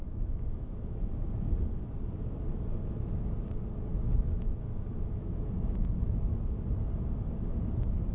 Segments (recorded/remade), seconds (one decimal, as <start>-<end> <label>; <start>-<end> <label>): 0.0-1.1 remade; 1.1-3.9 recorded; 3.9-5.5 remade; 5.5-8.1 recorded

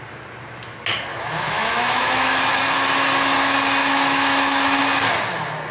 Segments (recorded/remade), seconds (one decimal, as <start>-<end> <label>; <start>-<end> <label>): 0.0-1.1 recorded; 1.1-2.6 remade; 2.6-3.8 recorded; 3.8-4.8 remade; 4.8-5.7 recorded